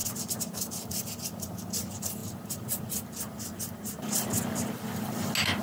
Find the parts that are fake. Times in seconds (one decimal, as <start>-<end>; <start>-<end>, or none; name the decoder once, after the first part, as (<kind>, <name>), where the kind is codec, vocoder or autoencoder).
0.9-2.2 (vocoder, BigVGAN v2)